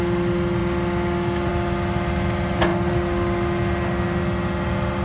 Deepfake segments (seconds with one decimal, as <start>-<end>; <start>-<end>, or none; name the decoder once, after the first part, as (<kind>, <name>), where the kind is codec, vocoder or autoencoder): none